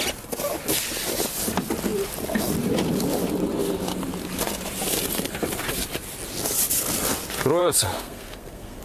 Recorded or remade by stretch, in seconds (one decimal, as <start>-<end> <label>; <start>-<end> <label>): 0.0-7.6 recorded; 7.6-8.8 remade